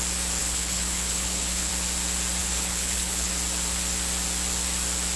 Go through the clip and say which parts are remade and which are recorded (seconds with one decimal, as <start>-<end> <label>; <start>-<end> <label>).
0.0-0.4 recorded; 0.4-1.7 remade; 1.7-2.4 recorded; 2.4-3.3 remade; 3.3-5.2 recorded